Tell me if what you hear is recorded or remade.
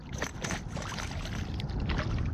remade